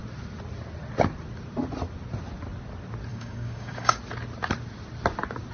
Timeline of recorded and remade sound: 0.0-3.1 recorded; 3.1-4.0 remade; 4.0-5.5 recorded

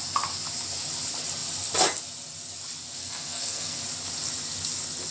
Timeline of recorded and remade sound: 0.0-3.0 recorded; 3.0-3.8 remade; 3.8-5.1 recorded

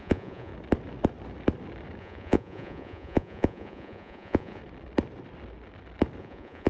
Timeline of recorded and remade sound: 0.0-0.5 remade; 0.5-2.0 recorded; 2.0-4.6 remade; 4.6-6.2 recorded; 6.2-6.7 remade

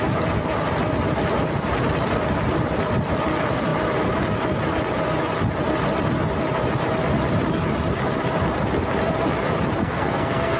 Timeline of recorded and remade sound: 0.0-9.8 recorded; 9.8-10.6 remade

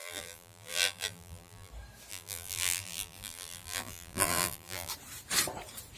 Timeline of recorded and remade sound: 0.0-1.7 remade; 1.7-2.1 recorded; 2.1-4.9 remade; 4.9-6.0 recorded

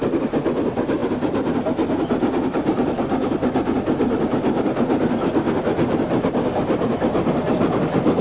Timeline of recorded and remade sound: 0.0-8.2 remade